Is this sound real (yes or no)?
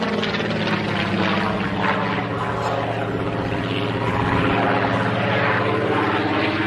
yes